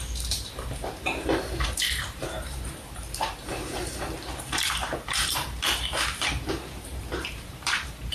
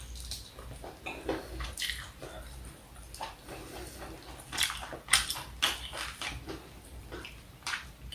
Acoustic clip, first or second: second